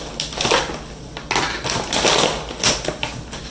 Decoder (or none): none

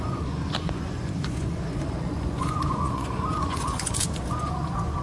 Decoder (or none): vocoder, Vocos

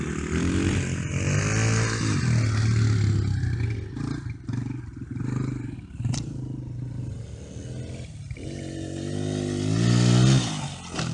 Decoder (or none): none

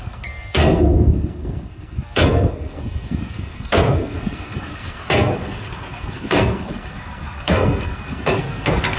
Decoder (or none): codec, SNAC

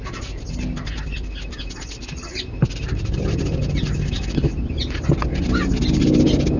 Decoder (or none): none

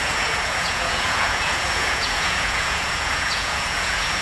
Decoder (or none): vocoder, Vocos